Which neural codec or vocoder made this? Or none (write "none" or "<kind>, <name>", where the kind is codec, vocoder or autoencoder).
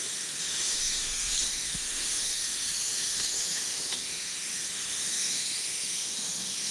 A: autoencoder, DAC-VAE